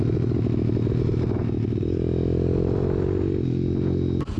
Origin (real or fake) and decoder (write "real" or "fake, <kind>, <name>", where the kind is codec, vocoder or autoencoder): real